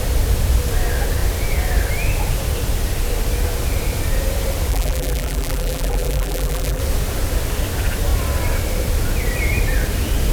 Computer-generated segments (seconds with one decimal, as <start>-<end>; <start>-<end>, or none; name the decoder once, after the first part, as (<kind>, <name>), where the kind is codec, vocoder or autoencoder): 4.7-6.8 (vocoder, BigVGAN v2)